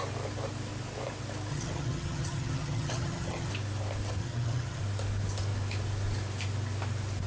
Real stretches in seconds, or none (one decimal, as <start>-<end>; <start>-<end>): 0.0-1.5; 3.5-4.2; 4.8-7.3